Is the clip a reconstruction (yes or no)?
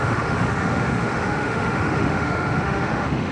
yes